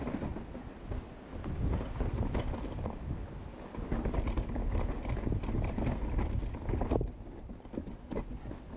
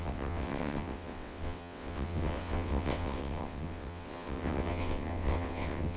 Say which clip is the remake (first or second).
second